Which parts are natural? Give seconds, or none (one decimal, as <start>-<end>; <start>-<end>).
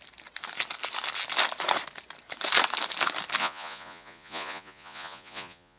0.0-3.4